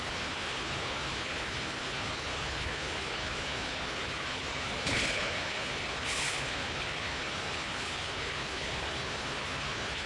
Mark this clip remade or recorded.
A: remade